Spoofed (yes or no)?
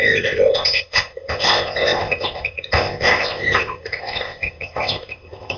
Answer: yes